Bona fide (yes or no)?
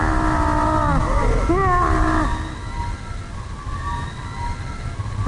yes